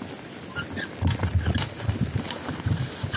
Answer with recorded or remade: recorded